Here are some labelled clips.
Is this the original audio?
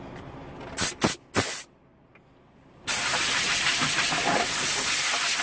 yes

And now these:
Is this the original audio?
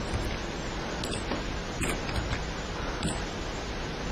yes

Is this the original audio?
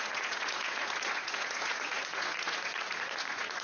no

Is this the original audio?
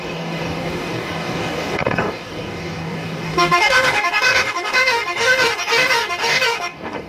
no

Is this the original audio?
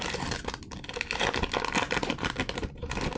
yes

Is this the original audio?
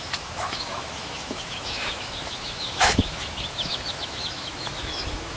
no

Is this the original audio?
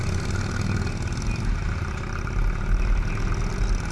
yes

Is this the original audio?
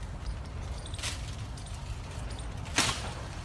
yes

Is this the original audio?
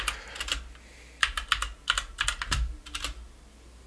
yes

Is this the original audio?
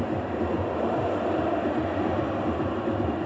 yes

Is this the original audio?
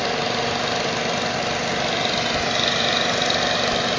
yes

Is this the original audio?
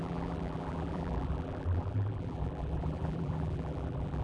no